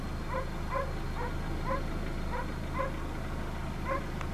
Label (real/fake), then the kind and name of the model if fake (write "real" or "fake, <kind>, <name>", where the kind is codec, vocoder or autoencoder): real